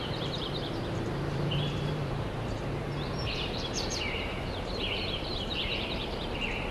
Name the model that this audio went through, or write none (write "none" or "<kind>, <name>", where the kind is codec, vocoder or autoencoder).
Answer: vocoder, BigVGAN v2